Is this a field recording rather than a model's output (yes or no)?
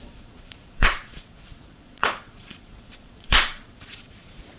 no